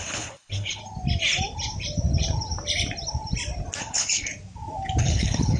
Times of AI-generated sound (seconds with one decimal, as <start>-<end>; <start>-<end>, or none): 0.0-0.8; 3.8-4.3; 5.0-5.6